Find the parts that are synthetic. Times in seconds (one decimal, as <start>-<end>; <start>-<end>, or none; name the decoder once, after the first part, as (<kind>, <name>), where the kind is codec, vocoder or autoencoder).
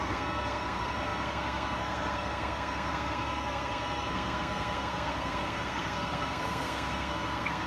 0.0-7.7 (codec, SNAC)